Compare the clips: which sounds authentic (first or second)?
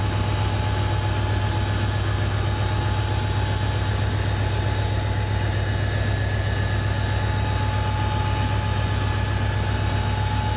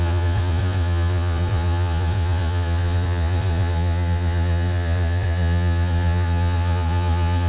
first